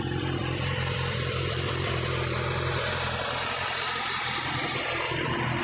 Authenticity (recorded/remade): recorded